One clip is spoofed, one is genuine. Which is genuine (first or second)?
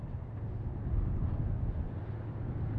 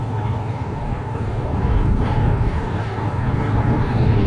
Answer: first